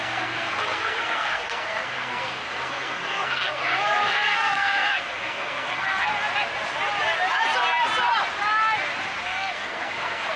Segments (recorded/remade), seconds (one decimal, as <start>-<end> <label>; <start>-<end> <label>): 0.0-6.1 remade; 6.1-9.2 recorded; 9.2-10.4 remade